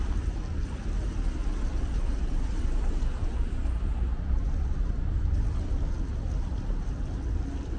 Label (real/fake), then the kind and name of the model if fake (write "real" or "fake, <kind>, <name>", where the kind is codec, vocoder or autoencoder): real